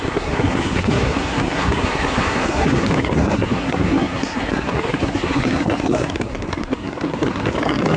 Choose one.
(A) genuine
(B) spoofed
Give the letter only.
B